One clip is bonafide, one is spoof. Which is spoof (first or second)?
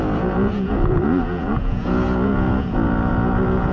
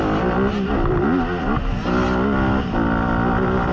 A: first